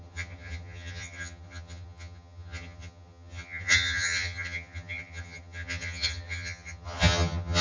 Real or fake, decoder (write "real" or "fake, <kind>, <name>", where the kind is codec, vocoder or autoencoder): fake, vocoder, HiFi-GAN